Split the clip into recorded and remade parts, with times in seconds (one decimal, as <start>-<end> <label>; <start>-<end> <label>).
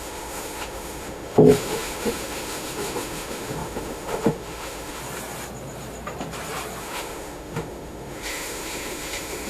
0.0-5.0 remade; 5.0-6.8 recorded; 6.8-9.5 remade